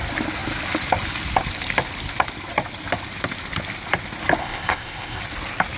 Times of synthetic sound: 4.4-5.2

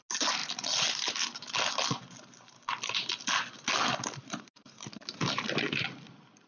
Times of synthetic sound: none